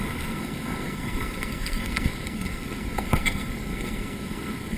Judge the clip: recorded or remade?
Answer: remade